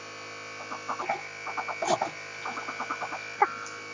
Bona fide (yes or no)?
yes